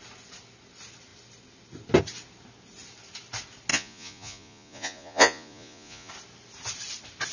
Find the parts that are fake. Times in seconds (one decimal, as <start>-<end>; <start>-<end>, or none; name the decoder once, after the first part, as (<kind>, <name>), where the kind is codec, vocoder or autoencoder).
3.7-6.1 (vocoder, Vocos)